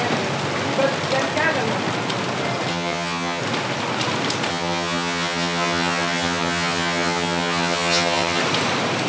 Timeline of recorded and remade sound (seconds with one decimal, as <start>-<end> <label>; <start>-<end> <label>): 0.0-2.7 recorded; 2.7-3.4 remade; 3.4-4.5 recorded; 4.5-8.4 remade; 8.4-9.1 recorded